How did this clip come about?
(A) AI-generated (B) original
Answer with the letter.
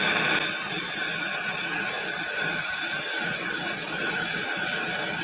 B